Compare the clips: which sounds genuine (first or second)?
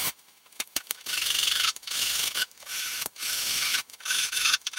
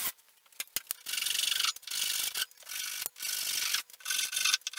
second